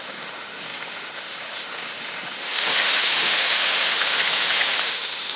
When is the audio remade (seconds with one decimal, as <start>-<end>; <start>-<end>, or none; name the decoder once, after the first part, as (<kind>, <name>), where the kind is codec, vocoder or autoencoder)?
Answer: 0.0-5.4 (autoencoder, DAC-VAE)